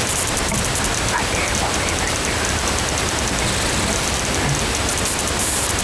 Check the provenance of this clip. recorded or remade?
recorded